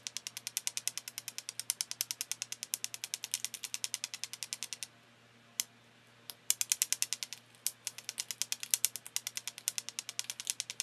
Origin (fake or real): real